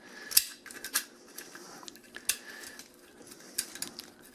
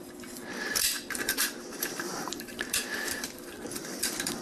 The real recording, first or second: first